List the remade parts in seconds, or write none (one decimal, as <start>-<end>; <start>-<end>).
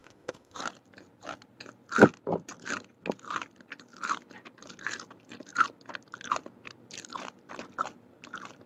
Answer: 0.0-0.6